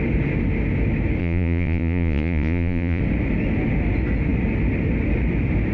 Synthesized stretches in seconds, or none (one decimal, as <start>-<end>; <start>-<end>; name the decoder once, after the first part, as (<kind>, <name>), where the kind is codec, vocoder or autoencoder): 1.2-3.0 (vocoder, Vocos)